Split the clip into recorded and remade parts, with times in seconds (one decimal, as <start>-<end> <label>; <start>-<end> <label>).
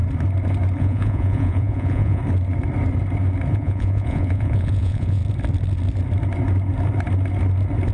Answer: 0.0-0.8 recorded; 0.8-2.2 remade; 2.2-3.5 recorded; 3.5-5.2 remade; 5.2-7.9 recorded